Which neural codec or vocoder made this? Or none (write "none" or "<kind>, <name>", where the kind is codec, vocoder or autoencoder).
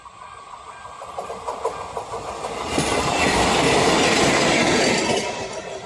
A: none